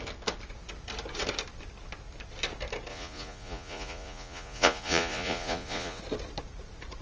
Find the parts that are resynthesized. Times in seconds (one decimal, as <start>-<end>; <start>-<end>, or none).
2.9-6.0

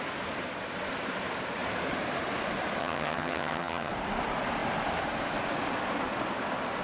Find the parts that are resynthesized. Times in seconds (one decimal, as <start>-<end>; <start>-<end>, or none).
2.8-3.9

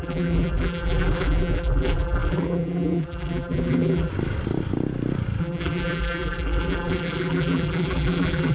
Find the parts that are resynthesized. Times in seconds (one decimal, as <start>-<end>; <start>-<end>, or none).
0.0-4.1; 5.4-8.5

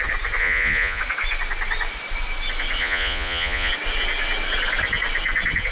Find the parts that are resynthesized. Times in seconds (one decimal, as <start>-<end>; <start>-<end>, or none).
0.4-1.0; 2.8-3.7

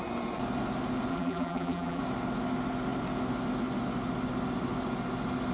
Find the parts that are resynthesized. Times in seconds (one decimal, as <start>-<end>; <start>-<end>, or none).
1.1-2.0

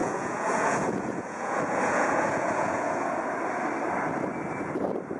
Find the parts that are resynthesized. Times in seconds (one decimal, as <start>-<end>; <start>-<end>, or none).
0.0-3.1